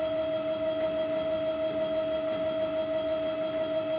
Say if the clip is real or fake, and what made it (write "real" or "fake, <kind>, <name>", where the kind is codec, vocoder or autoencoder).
real